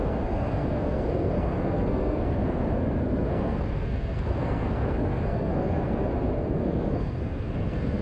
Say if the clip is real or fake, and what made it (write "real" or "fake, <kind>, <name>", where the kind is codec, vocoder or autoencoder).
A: fake, codec, SNAC